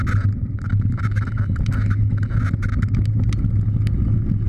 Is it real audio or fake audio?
real